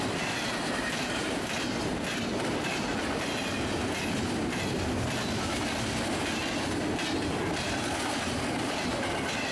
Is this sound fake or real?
real